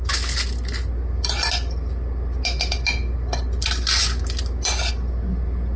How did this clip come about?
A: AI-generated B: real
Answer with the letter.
B